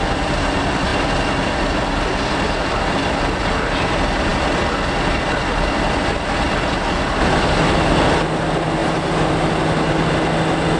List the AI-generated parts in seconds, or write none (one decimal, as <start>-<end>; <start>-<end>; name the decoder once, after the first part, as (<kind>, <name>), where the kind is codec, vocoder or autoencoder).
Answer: none